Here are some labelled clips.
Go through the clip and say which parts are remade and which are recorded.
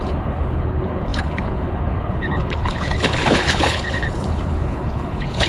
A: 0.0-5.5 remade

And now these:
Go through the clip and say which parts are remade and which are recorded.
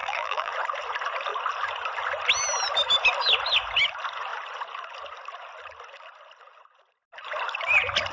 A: 0.0-0.5 remade; 0.5-8.1 recorded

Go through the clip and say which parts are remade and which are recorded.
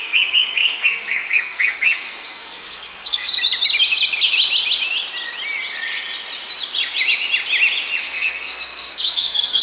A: 0.0-3.3 remade; 3.3-8.0 recorded; 8.0-9.6 remade